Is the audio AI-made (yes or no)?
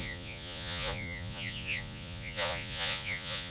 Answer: yes